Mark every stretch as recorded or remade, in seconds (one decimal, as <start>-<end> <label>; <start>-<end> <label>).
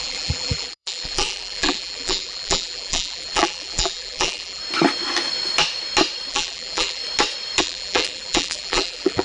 0.0-4.6 remade; 4.6-6.3 recorded; 6.3-7.0 remade; 7.0-7.6 recorded; 7.6-9.2 remade